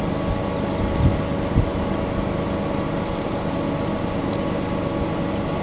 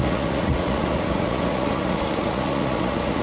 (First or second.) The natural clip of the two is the first